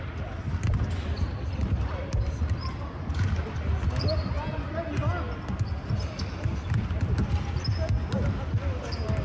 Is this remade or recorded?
recorded